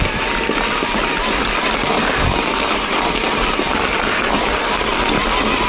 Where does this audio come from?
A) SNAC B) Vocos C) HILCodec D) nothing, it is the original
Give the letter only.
D